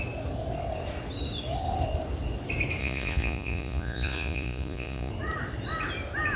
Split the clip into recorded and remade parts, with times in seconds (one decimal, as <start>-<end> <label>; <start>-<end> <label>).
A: 0.0-2.8 recorded; 2.8-5.1 remade; 5.1-6.4 recorded